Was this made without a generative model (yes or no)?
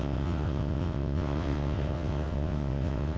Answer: no